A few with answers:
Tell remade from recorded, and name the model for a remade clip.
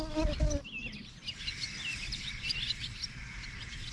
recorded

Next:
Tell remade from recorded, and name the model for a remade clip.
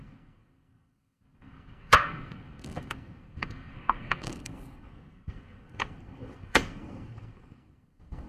remade, codec, SNAC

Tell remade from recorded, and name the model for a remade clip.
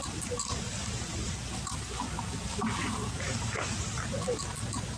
remade, vocoder, BigVGAN v2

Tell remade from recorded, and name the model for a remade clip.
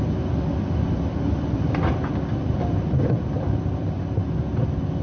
recorded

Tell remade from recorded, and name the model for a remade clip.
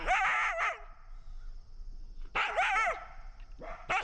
recorded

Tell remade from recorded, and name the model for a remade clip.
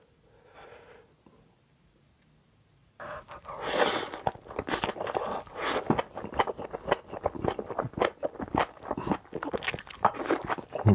recorded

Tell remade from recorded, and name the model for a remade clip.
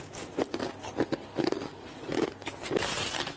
recorded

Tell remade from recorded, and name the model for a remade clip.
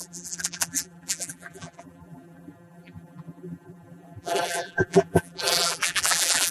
remade, vocoder, BigVGAN v2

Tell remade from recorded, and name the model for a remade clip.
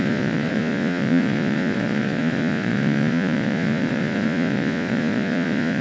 remade, vocoder, Vocos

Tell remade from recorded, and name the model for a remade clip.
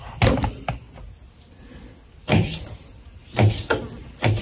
recorded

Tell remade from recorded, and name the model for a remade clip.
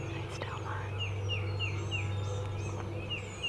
recorded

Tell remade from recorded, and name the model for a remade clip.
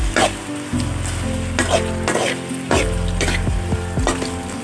recorded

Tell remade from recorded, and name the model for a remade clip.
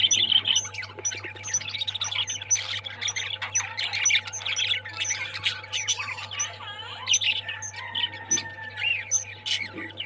recorded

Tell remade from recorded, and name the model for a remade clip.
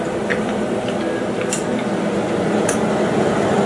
remade, vocoder, BigVGAN v2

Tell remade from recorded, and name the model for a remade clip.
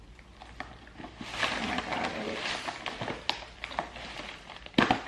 recorded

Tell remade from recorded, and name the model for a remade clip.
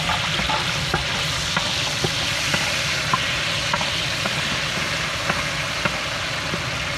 recorded